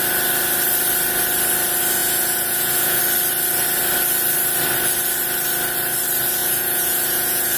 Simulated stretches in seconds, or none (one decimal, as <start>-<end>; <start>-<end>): 2.0-3.0; 6.4-7.6